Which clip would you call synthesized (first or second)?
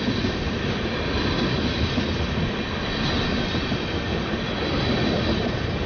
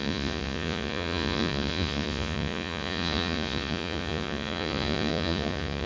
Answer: second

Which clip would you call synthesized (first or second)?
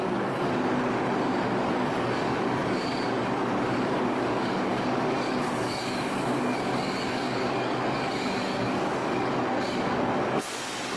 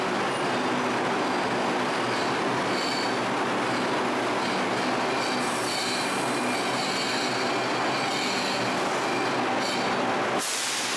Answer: first